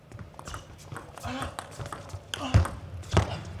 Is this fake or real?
real